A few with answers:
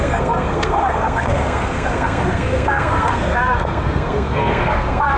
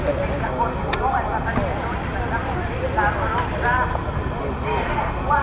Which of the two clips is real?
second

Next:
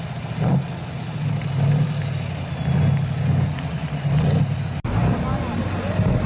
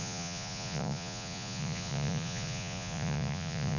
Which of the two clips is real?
first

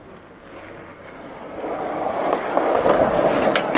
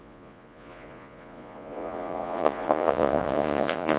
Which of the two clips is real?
first